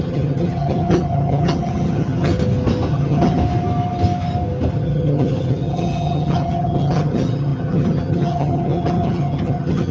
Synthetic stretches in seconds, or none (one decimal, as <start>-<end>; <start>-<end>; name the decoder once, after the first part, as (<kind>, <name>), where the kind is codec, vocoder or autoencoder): 0.0-2.3 (vocoder, HiFi-GAN); 2.9-3.4; 4.7-9.9